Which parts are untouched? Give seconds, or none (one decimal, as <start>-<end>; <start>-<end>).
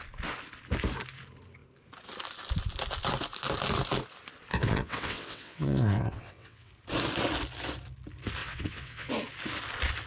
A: 0.0-4.5; 6.7-8.4; 9.1-10.1